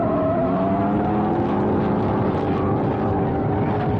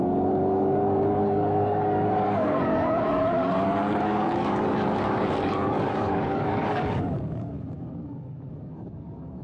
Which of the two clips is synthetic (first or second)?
second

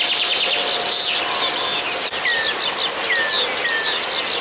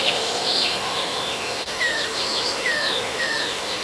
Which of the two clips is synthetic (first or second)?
second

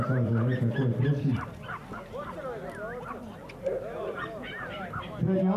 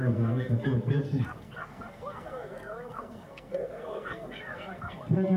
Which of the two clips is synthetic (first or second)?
second